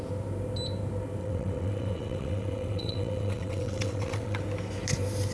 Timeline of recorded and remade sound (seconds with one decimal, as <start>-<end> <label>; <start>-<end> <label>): 0.0-1.2 recorded; 1.2-4.4 remade; 4.4-5.3 recorded